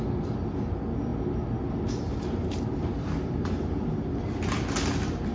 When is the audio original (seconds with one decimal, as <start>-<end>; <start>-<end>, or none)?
0.0-2.1; 3.9-5.3